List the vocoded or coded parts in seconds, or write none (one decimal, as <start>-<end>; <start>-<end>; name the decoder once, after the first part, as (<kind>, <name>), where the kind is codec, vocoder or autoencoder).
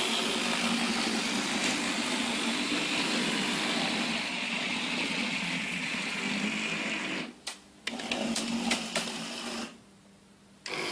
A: 4.3-6.2 (vocoder, Vocos)